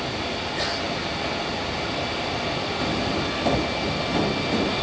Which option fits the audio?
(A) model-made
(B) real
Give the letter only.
B